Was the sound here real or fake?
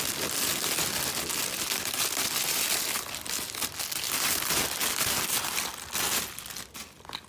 real